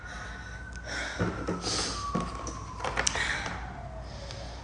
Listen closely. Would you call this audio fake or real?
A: real